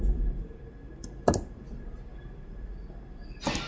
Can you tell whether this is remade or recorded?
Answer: recorded